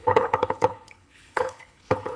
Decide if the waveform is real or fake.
fake